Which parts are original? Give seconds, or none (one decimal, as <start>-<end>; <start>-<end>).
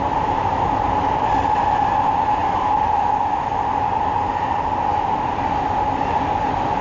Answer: 0.0-6.8